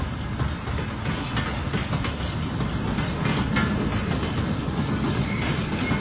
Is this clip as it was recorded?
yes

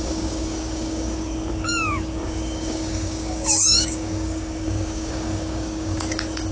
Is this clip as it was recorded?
no